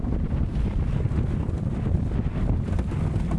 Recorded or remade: recorded